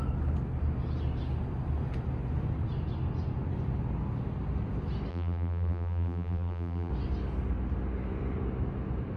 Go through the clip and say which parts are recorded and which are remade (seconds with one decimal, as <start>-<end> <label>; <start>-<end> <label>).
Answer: 0.0-5.1 recorded; 5.1-6.9 remade; 6.9-9.2 recorded